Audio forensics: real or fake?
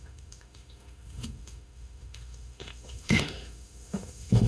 fake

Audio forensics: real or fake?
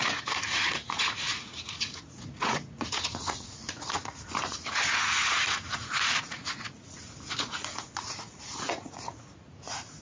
fake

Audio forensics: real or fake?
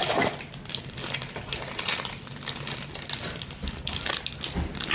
real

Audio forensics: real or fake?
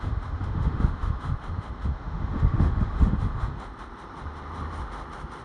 fake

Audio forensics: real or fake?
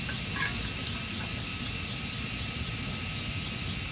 real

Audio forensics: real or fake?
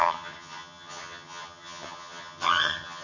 fake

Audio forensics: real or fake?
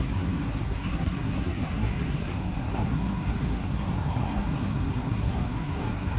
fake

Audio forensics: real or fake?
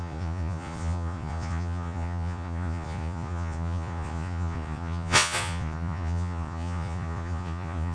fake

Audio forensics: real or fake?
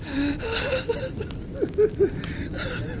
real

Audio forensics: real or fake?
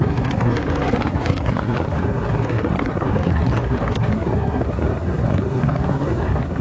fake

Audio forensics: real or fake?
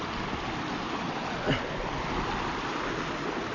real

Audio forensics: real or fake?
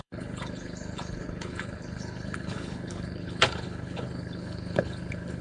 fake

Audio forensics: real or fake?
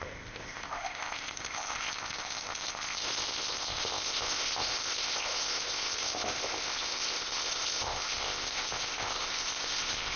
fake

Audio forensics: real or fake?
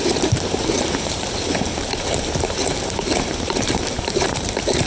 fake